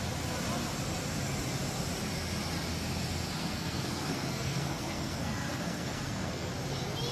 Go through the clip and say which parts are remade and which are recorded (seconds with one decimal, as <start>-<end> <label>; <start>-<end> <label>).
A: 0.0-3.4 recorded; 3.4-6.5 remade; 6.5-7.1 recorded